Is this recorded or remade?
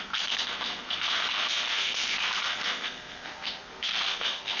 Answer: remade